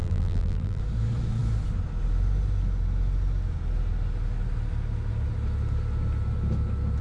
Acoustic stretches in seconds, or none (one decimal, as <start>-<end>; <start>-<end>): 0.8-7.0